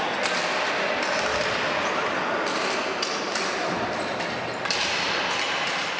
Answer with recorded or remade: recorded